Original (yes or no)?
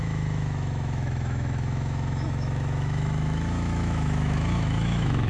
no